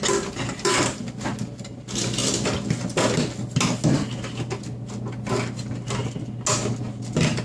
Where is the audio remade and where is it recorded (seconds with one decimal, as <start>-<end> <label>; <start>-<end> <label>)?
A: 0.0-7.4 recorded